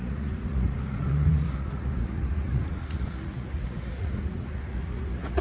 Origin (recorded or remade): remade